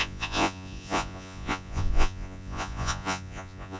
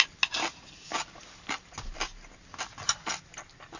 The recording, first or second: second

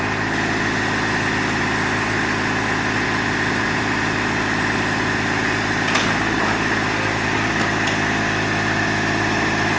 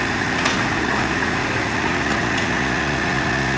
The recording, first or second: first